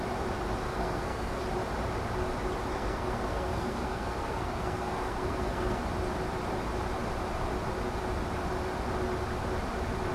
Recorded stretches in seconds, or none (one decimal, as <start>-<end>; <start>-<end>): 0.0-0.6; 1.4-2.7; 5.8-10.1